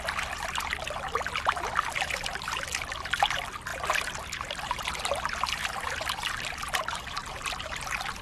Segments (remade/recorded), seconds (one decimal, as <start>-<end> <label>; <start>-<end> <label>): 0.0-8.2 recorded